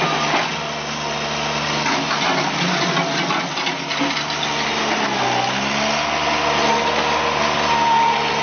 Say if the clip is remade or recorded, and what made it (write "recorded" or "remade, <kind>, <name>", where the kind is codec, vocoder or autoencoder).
recorded